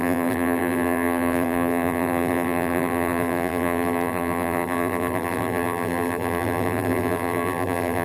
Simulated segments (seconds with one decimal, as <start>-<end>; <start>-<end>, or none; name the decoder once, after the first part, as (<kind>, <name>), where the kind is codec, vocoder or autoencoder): 0.0-8.0 (vocoder, BigVGAN v2)